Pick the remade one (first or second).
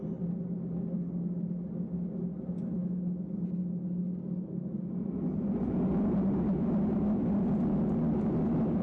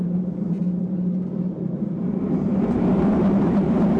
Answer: second